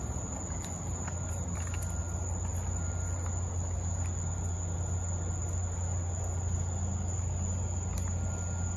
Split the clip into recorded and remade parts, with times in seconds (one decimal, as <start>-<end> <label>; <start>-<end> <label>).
0.0-8.8 recorded